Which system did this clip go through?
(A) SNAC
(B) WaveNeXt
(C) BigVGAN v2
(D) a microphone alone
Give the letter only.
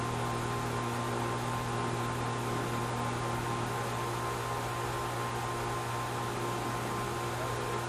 D